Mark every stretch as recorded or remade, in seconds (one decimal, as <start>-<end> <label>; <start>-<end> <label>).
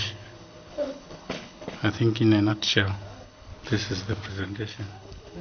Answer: 0.0-1.8 remade; 1.8-2.5 recorded; 2.5-3.5 remade; 3.5-4.3 recorded; 4.3-5.4 remade